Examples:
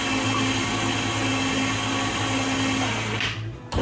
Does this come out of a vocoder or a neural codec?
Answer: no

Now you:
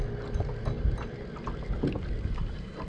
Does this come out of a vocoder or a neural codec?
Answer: no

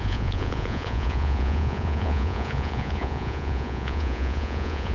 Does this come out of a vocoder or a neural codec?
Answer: yes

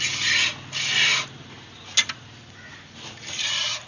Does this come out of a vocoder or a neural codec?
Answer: no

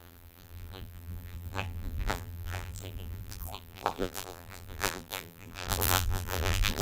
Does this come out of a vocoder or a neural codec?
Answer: yes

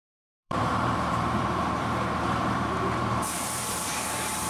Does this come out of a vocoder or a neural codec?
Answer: yes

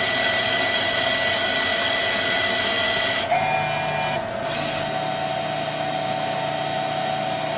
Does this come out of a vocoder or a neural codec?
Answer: no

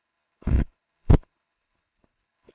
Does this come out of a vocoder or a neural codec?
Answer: yes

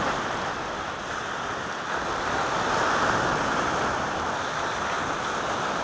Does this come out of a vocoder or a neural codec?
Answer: yes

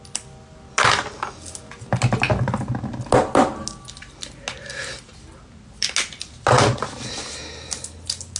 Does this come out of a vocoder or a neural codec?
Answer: no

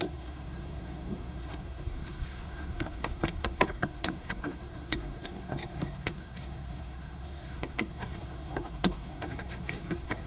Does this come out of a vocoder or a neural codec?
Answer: yes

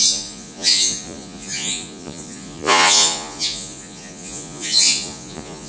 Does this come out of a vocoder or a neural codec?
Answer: yes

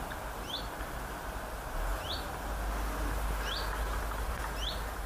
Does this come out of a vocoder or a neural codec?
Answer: no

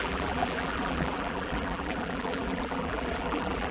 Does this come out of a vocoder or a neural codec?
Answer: yes